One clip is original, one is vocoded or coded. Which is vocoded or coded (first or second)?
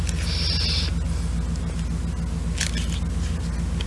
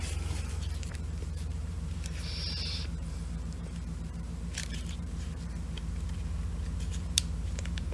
second